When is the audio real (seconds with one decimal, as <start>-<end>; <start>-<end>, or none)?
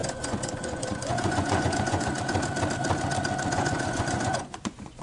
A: 2.1-3.5